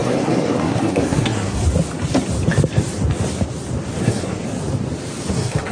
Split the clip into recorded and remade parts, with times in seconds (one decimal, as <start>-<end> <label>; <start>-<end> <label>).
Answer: 0.0-1.6 remade; 1.6-4.0 recorded; 4.0-4.4 remade; 4.4-5.3 recorded; 5.3-5.7 remade